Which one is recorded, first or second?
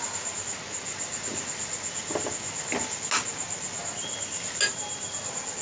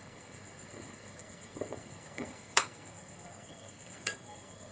first